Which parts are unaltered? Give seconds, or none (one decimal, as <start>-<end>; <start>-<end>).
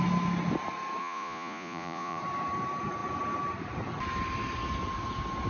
0.0-1.0; 2.2-5.5